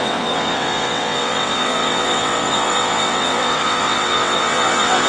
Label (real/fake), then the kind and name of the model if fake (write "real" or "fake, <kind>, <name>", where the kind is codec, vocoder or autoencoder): fake, vocoder, WaveNeXt